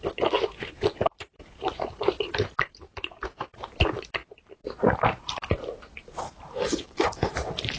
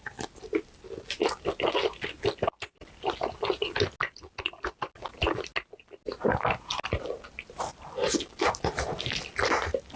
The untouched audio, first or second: second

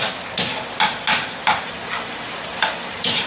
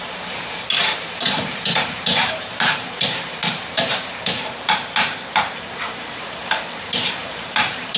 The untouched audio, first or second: first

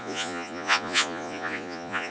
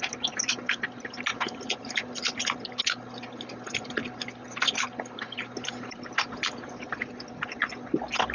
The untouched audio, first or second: second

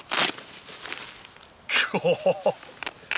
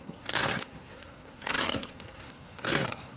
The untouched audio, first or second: first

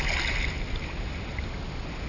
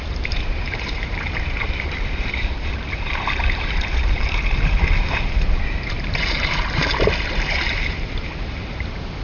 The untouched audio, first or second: first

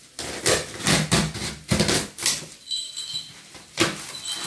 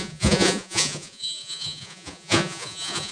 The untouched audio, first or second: first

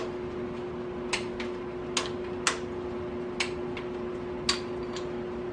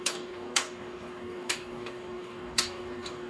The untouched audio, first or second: first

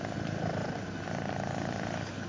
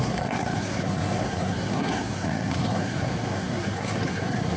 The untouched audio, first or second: first